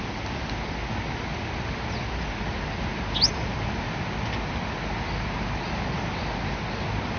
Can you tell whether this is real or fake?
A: real